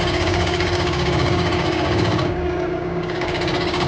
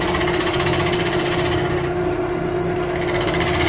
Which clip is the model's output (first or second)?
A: first